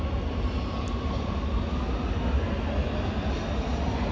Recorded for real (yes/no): yes